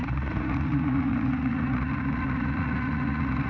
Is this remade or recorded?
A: remade